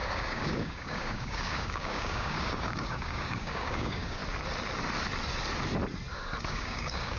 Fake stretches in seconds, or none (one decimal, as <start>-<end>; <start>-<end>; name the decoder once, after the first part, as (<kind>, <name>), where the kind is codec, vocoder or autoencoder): 0.0-4.2 (codec, DAC); 6.5-7.2